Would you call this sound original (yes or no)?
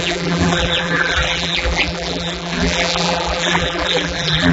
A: no